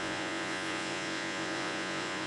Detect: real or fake fake